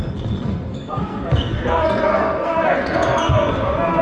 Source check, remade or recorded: remade